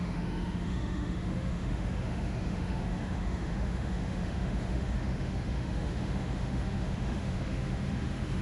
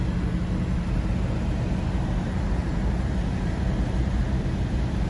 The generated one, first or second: first